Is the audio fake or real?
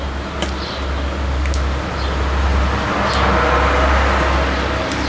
real